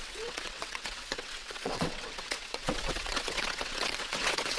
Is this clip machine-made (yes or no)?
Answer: yes